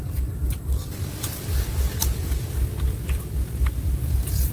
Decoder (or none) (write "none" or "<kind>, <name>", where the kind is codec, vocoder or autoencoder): none